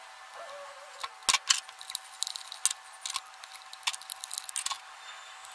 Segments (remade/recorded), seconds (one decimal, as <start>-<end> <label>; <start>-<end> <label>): 0.0-5.5 recorded